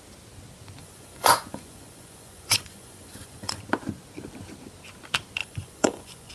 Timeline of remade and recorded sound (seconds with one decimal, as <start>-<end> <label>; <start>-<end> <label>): 0.0-0.8 recorded; 0.8-3.6 remade; 3.6-5.4 recorded; 5.4-6.3 remade

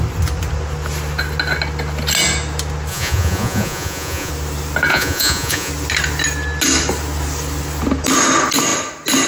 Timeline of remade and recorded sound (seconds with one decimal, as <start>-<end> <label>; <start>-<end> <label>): 0.0-2.9 recorded; 2.9-4.3 remade; 4.3-4.9 recorded; 4.9-5.7 remade; 5.7-9.3 recorded

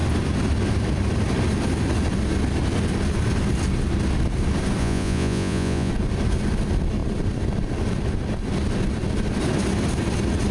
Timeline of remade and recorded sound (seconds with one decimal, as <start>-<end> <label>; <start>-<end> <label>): 0.0-4.8 recorded; 4.8-5.9 remade; 5.9-10.5 recorded